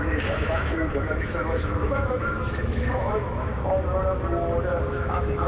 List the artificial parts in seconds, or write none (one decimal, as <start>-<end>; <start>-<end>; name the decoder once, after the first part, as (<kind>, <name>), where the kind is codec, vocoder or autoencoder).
0.0-3.5 (autoencoder, DAC-VAE); 4.9-5.5